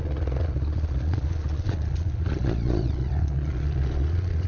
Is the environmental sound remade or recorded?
remade